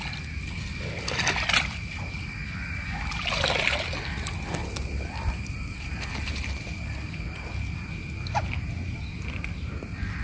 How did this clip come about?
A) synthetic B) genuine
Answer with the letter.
B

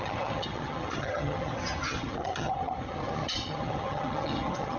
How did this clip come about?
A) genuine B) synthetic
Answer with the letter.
B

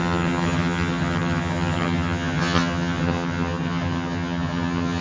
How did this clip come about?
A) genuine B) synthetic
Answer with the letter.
B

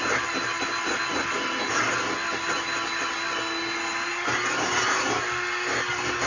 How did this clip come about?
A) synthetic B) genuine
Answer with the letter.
B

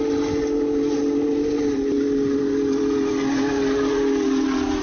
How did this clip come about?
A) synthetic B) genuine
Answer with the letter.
B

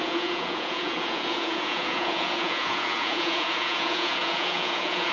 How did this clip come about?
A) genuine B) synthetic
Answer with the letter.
B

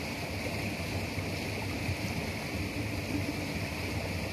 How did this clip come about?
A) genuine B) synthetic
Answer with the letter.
A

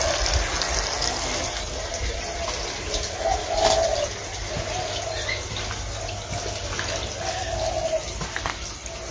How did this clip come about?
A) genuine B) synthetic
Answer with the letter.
A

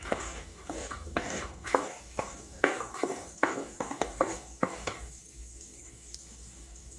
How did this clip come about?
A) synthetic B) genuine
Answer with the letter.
A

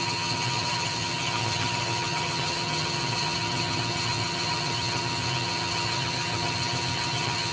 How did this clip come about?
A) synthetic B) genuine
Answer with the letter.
A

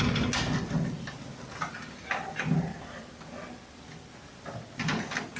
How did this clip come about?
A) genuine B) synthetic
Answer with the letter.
A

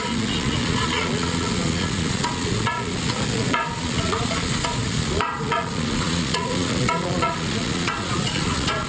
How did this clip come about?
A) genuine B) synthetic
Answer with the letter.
B